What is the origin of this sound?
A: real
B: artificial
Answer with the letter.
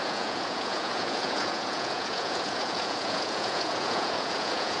B